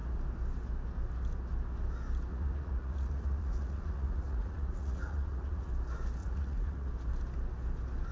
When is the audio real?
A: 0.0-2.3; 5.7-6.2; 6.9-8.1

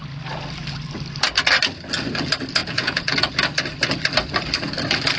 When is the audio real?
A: 0.0-2.6; 3.3-5.2

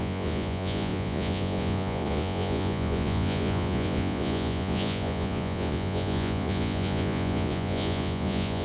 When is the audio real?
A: none

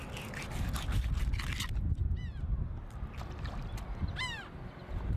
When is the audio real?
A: 0.0-5.2

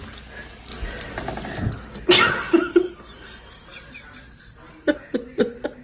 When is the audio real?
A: 0.0-5.8